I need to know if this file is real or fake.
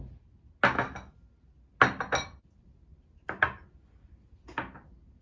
real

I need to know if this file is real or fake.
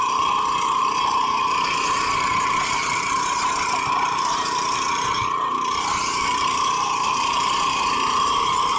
fake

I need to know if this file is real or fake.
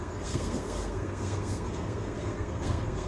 fake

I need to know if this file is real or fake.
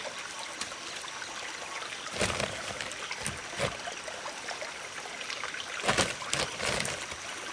real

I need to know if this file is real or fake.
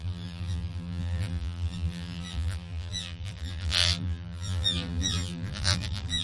fake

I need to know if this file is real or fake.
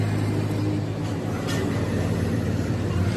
real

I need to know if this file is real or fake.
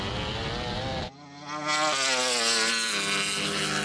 real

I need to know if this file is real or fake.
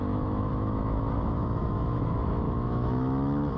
fake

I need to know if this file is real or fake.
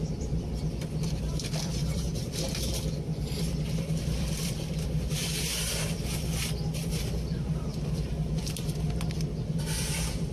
fake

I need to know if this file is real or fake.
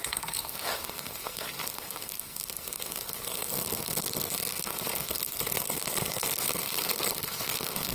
fake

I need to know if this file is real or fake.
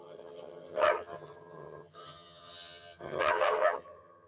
fake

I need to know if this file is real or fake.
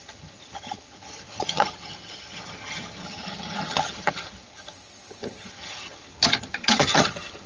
fake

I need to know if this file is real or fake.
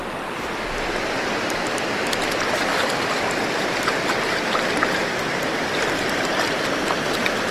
fake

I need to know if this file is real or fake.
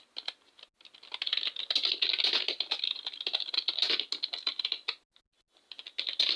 real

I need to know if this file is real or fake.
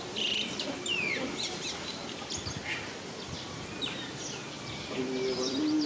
fake